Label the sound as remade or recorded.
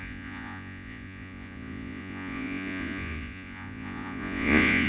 remade